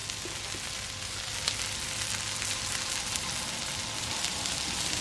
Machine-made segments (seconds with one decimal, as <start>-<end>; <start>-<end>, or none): none